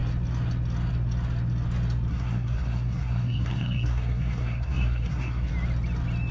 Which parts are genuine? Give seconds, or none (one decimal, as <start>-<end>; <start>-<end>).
0.0-2.1; 5.5-6.3